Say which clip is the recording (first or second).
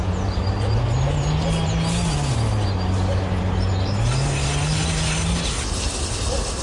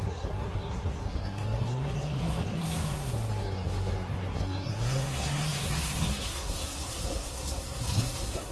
first